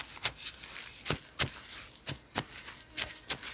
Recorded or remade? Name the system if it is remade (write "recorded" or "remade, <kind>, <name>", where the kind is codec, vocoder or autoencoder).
recorded